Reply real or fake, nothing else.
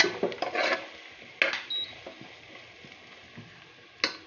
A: real